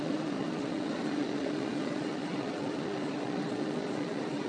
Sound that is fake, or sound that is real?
fake